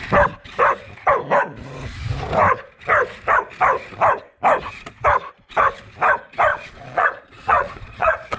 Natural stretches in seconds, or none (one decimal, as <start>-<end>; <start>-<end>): 0.0-6.5